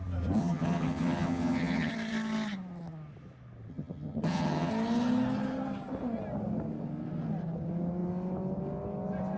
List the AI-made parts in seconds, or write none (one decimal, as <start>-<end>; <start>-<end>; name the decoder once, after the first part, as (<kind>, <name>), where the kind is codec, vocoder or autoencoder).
0.4-1.9 (vocoder, HiFi-GAN); 3.7-4.7